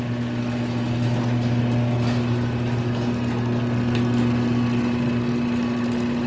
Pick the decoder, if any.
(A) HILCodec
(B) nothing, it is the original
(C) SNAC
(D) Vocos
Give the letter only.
B